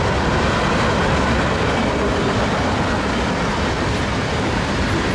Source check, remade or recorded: recorded